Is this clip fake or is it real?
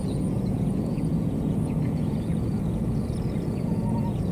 fake